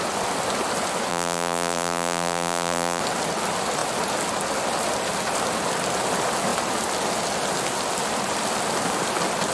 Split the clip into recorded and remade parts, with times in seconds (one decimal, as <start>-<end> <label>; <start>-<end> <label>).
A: 0.0-1.1 recorded; 1.1-3.0 remade; 3.0-9.5 recorded

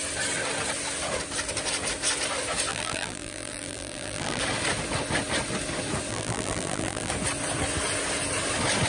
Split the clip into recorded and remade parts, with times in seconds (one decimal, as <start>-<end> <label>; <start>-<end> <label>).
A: 0.0-2.7 recorded; 2.7-4.4 remade; 4.4-6.1 recorded; 6.1-7.1 remade; 7.1-8.9 recorded